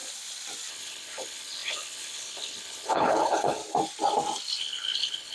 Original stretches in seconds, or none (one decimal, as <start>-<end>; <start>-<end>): 0.0-0.7; 3.6-4.6